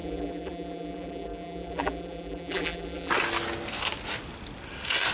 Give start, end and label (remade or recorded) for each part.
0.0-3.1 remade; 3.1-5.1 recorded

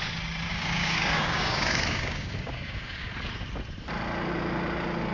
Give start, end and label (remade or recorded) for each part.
0.0-0.5 recorded; 0.5-3.1 remade; 3.1-5.1 recorded

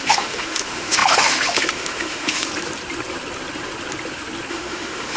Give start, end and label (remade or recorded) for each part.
0.0-2.5 remade; 2.5-4.5 recorded; 4.5-5.2 remade

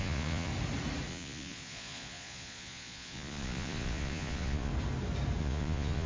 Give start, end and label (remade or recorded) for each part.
0.0-0.5 remade; 0.5-1.1 recorded; 1.1-4.7 remade; 4.7-5.4 recorded; 5.4-6.1 remade

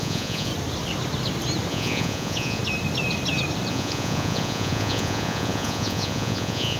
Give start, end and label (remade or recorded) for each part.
0.0-0.5 remade; 0.5-1.7 recorded; 1.7-2.6 remade; 2.6-3.7 recorded; 3.7-6.8 remade

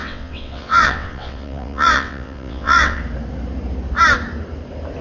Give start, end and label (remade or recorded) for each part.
0.0-3.0 remade; 3.0-5.0 recorded

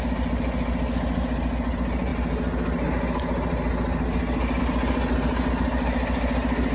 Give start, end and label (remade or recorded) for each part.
0.0-6.7 recorded

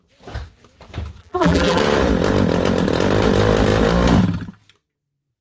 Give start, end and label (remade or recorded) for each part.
0.0-1.2 recorded; 1.2-1.8 remade; 1.8-5.4 recorded